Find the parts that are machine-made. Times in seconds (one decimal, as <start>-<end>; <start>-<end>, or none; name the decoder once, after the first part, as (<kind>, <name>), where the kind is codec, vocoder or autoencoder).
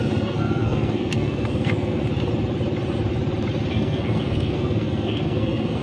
0.0-2.0 (codec, SNAC); 3.7-5.8